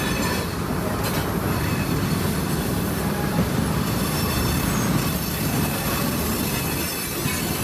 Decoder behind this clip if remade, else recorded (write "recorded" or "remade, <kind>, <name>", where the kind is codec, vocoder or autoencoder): recorded